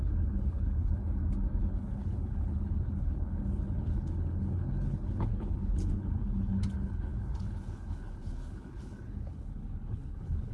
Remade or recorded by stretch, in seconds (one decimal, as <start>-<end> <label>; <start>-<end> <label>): 0.0-1.0 remade; 1.0-1.6 recorded; 1.6-10.5 remade